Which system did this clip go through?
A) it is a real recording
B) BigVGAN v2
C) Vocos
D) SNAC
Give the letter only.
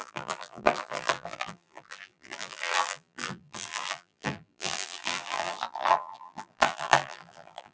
B